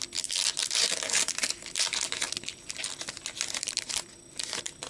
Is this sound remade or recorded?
recorded